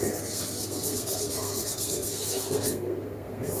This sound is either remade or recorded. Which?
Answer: remade